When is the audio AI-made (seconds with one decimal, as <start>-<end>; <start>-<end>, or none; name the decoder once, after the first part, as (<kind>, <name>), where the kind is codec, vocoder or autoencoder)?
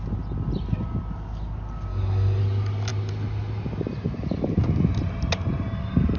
1.9-2.4 (codec, DAC)